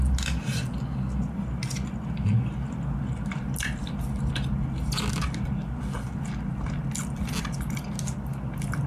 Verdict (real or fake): real